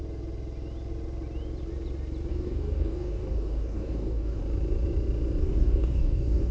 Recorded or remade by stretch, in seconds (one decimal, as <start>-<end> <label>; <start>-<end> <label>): 0.0-2.3 recorded; 2.3-4.4 remade; 4.4-5.4 recorded; 5.4-6.5 remade